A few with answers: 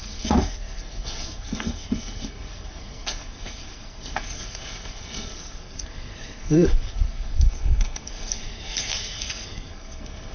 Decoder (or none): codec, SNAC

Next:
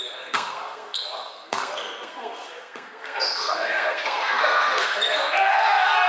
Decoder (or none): codec, SNAC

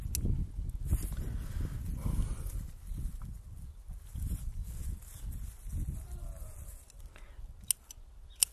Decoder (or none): none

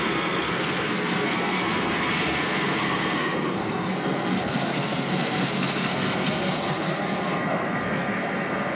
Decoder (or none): codec, SNAC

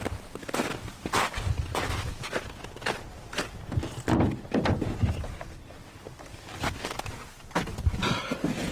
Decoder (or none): none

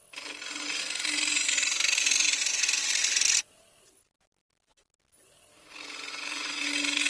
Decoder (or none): none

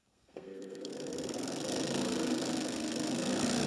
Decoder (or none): codec, SNAC